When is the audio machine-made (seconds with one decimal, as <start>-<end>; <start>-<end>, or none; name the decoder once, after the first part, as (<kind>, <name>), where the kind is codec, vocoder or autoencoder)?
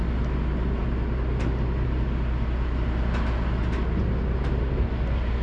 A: none